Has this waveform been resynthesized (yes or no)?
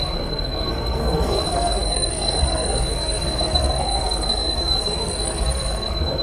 yes